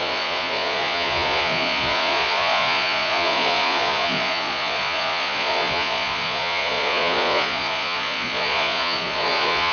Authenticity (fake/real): fake